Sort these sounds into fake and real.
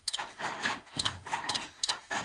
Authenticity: fake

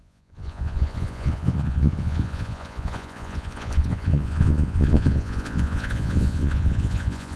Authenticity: fake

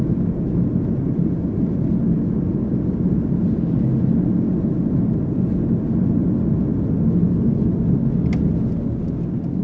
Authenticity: real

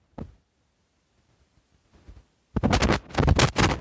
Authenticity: real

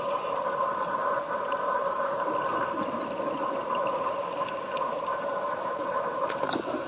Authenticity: real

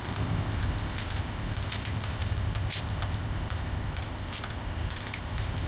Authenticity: fake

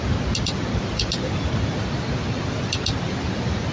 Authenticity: real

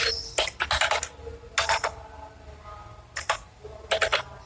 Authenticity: real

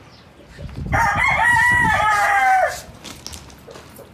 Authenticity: real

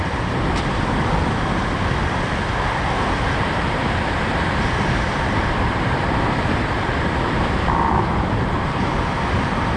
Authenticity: fake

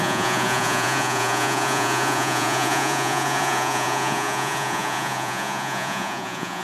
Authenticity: fake